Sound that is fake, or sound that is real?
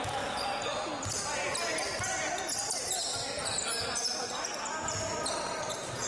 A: real